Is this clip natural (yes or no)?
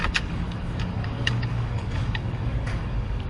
no